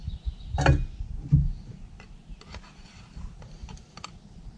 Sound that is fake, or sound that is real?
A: real